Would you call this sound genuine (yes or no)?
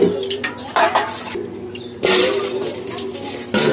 yes